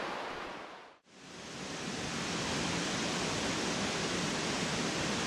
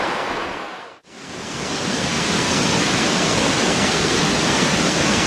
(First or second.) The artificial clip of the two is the second